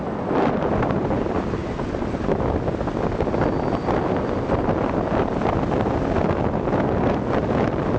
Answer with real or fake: real